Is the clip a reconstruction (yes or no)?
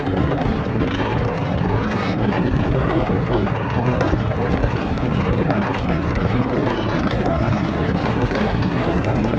yes